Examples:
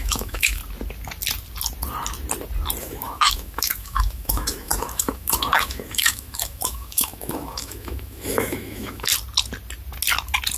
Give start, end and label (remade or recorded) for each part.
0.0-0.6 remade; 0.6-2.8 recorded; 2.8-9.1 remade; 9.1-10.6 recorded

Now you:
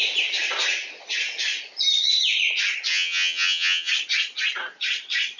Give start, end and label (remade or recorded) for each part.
0.0-2.9 recorded; 2.9-3.9 remade; 3.9-5.4 recorded